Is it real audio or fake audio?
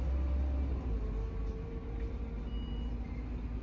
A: real